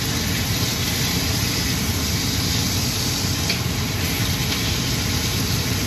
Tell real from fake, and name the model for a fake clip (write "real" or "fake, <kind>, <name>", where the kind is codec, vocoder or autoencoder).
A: real